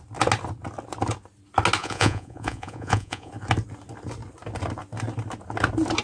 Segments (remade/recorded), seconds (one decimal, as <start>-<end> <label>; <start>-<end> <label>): 0.0-1.8 recorded; 1.8-3.3 remade; 3.3-6.0 recorded